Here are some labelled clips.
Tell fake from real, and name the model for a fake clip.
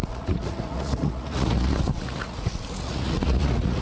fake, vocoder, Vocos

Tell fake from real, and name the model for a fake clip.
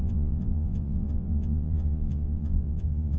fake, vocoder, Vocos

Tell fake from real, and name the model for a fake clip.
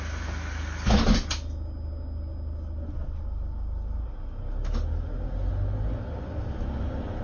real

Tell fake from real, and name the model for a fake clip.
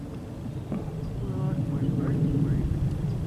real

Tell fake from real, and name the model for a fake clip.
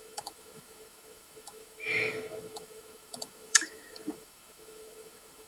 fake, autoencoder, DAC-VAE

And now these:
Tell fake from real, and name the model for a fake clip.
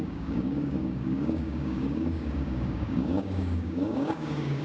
fake, codec, DAC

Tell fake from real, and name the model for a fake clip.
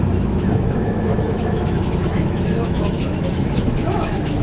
fake, autoencoder, DAC-VAE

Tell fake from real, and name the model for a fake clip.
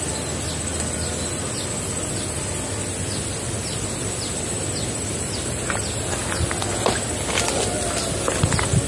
real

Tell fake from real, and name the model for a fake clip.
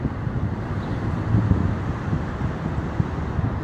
real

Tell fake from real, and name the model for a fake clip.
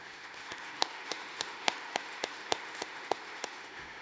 fake, autoencoder, DAC-VAE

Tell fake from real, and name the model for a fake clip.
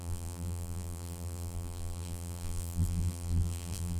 fake, vocoder, BigVGAN v2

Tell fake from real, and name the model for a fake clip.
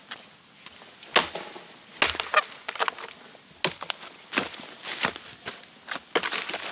real